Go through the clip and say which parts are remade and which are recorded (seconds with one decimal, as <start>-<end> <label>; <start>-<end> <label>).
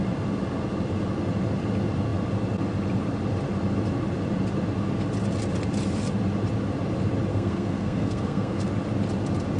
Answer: 0.0-7.3 recorded; 7.3-8.7 remade; 8.7-9.6 recorded